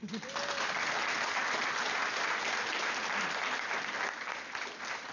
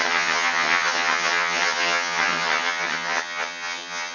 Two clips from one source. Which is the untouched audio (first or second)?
first